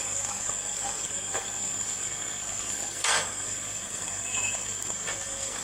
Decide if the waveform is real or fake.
fake